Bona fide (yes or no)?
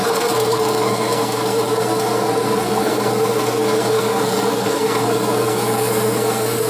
no